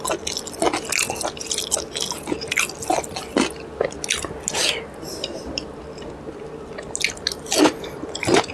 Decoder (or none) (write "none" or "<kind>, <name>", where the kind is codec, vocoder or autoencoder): none